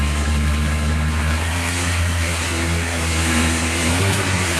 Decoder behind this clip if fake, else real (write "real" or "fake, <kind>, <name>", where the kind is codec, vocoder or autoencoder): fake, codec, SNAC